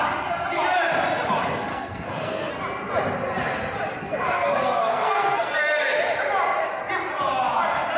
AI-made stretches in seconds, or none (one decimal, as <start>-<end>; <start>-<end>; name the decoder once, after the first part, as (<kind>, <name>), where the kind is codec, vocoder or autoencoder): 1.7-2.5 (codec, SNAC); 4.0-5.6